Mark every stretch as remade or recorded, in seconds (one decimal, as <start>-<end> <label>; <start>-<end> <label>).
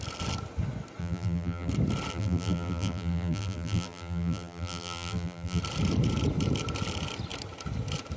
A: 0.0-1.0 recorded; 1.0-1.7 remade; 1.7-2.1 recorded; 2.1-5.6 remade; 5.6-8.2 recorded